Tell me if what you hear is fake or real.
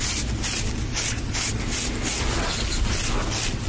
real